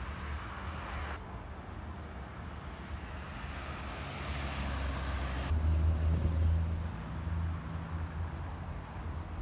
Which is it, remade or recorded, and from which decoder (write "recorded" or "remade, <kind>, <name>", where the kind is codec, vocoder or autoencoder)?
recorded